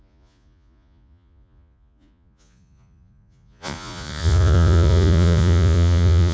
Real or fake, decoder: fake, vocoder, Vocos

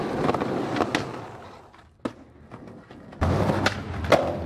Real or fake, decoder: real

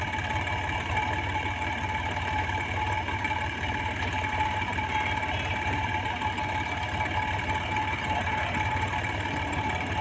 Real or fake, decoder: fake, vocoder, BigVGAN v2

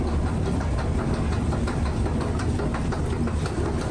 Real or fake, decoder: real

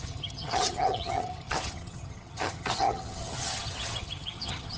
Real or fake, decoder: fake, vocoder, HiFi-GAN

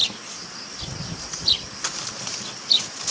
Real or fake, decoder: real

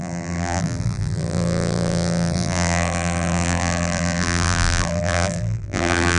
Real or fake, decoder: fake, vocoder, BigVGAN v2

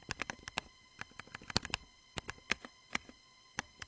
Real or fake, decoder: real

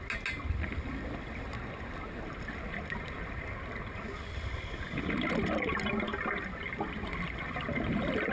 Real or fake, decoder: real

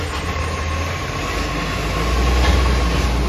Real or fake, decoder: real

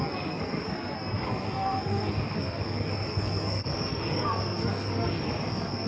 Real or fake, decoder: fake, codec, SNAC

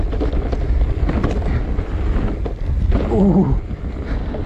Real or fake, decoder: real